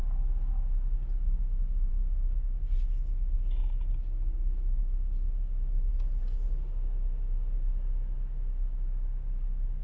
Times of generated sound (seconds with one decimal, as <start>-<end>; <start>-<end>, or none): none